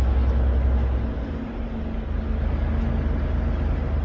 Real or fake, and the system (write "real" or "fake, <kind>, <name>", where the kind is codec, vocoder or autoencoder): real